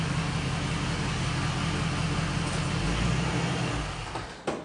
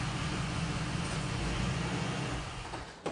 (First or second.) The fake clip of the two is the second